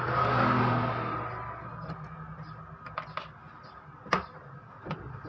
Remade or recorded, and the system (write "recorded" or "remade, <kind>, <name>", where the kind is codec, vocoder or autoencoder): recorded